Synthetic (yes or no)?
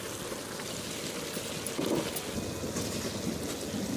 no